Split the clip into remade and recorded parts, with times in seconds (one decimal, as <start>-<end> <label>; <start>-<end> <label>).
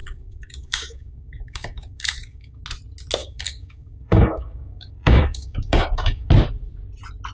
0.0-2.6 remade; 2.6-3.2 recorded; 3.2-6.3 remade; 6.3-7.3 recorded